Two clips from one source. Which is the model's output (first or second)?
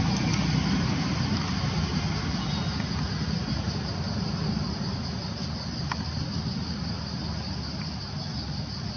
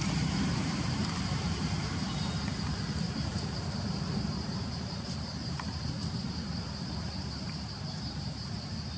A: second